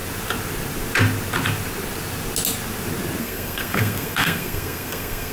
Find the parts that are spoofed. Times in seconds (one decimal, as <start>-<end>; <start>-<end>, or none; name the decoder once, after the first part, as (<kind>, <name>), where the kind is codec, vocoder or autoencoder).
3.2-5.3 (codec, SNAC)